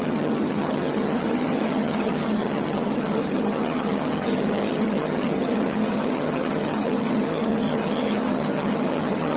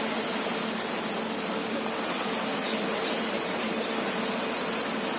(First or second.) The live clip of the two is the second